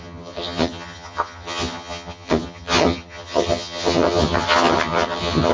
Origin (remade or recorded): remade